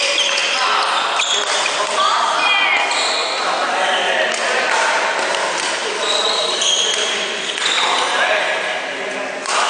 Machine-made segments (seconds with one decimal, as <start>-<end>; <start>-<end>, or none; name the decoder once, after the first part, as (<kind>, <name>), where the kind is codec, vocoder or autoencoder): 5.8-9.1 (vocoder, BigVGAN v2)